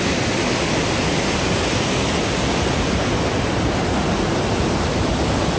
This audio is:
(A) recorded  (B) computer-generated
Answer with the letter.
A